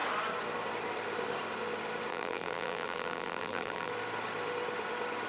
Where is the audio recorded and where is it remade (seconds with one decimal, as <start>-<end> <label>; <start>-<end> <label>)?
0.0-2.1 recorded; 2.1-3.9 remade; 3.9-5.3 recorded